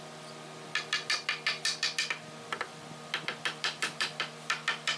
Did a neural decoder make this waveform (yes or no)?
no